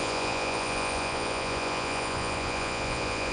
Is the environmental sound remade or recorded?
remade